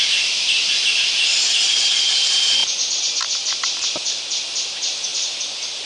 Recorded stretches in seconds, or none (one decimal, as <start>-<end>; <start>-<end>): 0.0-5.9

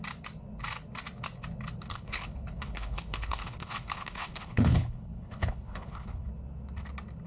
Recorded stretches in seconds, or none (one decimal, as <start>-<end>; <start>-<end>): 0.0-1.9; 6.3-7.3

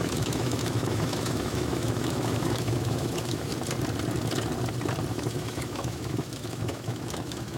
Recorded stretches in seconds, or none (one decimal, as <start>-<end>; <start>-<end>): 3.5-5.1

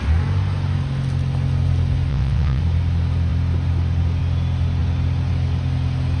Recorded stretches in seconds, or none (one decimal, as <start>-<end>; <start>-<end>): 0.0-2.1; 2.6-6.2

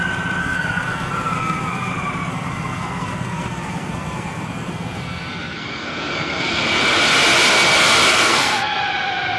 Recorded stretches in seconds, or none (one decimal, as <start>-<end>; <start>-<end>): 0.0-0.4; 1.9-2.3; 6.6-8.1; 8.8-9.4

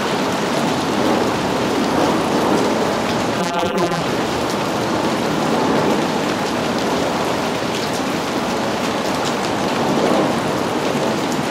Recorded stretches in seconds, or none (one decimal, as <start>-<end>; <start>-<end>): 0.0-3.4; 4.0-11.5

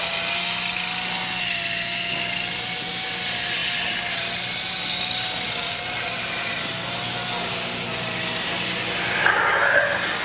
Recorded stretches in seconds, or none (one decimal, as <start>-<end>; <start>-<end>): 0.0-10.2